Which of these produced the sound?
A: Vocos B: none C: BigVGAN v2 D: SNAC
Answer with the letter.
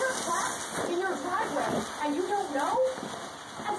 B